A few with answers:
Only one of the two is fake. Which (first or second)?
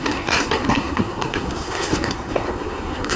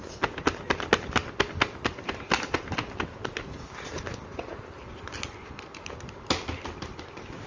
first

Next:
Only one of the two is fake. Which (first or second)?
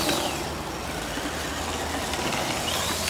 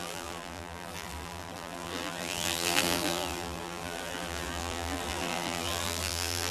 second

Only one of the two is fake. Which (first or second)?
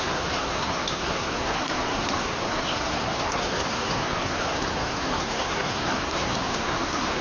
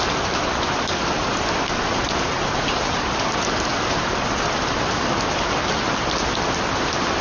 first